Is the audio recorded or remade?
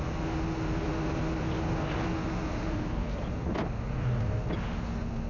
recorded